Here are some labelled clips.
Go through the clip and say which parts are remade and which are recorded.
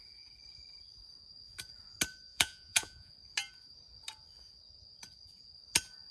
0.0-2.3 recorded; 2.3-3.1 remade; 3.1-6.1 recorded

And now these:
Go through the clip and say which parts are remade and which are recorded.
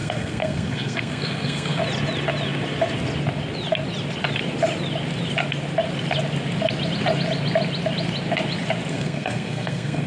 0.0-1.8 remade; 1.8-8.9 recorded; 8.9-10.1 remade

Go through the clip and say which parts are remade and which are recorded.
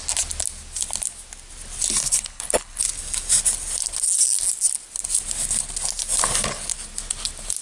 0.0-2.0 recorded; 2.0-2.8 remade; 2.8-7.6 recorded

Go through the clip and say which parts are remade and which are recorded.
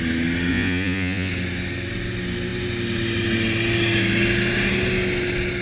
0.0-0.5 recorded; 0.5-1.3 remade; 1.3-5.6 recorded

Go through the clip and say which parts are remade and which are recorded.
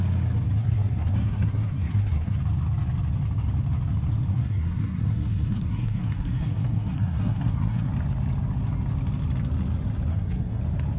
0.0-0.6 recorded; 0.6-2.4 remade; 2.4-4.3 recorded; 4.3-7.9 remade; 7.9-10.1 recorded; 10.1-10.6 remade; 10.6-11.0 recorded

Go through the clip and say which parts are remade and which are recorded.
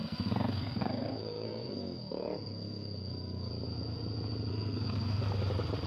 0.0-3.5 remade; 3.5-4.5 recorded; 4.5-5.2 remade; 5.2-5.9 recorded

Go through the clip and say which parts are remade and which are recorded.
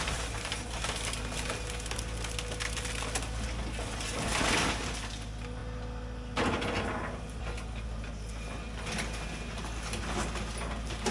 0.0-11.1 recorded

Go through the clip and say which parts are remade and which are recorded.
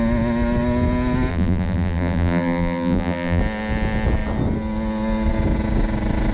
0.0-1.3 recorded; 1.3-3.4 remade; 3.4-6.3 recorded